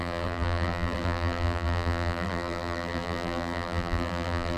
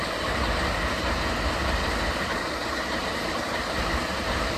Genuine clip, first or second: second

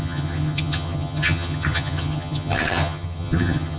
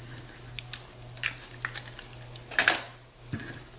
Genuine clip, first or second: second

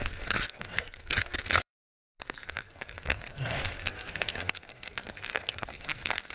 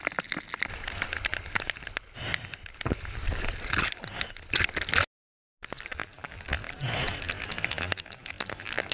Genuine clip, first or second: second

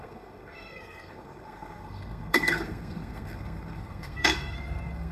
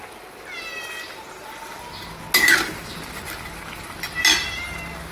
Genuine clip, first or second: second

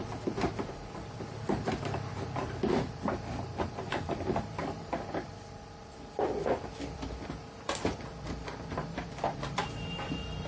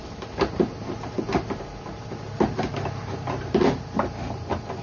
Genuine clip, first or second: second